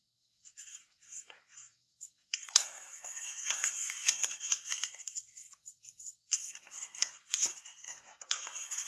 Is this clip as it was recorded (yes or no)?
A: no